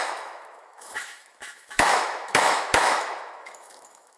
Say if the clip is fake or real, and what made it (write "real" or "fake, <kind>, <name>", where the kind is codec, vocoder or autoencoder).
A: fake, autoencoder, DAC-VAE